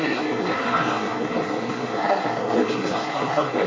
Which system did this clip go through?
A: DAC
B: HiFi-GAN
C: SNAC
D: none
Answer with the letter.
C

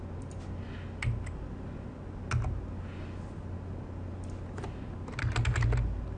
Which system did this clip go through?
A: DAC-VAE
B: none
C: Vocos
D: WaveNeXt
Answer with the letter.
B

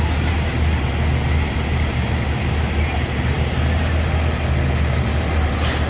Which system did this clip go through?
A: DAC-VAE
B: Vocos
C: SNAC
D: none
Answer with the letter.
D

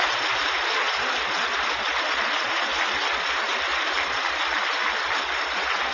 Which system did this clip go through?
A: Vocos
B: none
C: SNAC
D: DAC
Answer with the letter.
B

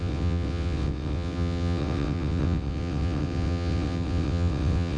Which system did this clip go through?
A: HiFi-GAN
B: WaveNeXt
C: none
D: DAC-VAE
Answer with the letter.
B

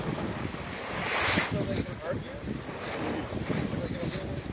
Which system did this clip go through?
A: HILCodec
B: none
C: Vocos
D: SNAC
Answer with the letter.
B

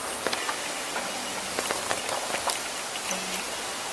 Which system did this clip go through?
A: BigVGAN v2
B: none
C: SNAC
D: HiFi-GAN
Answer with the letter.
B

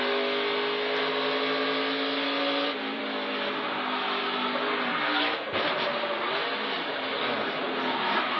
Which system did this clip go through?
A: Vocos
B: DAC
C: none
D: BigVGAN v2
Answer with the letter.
C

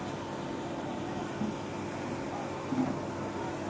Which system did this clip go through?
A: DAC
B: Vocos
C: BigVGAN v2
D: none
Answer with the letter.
D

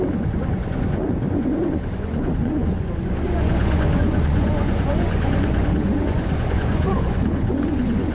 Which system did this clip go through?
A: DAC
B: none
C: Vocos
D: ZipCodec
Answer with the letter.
C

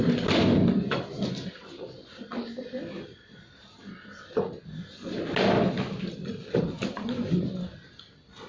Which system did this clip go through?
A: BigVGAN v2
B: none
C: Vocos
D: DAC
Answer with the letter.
B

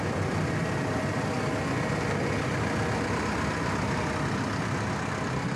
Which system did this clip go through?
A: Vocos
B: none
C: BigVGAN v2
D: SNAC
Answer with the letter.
B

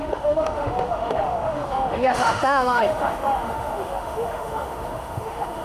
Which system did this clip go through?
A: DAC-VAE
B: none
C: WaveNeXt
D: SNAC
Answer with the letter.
A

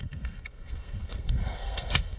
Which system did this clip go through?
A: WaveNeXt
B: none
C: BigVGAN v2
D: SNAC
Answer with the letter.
D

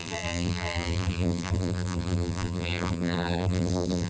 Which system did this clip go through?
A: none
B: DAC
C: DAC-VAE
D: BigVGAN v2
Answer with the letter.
D